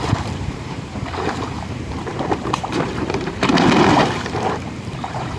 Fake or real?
fake